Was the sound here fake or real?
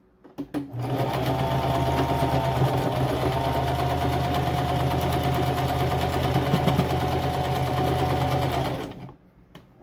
real